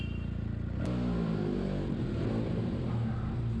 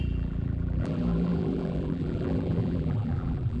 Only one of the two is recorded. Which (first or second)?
first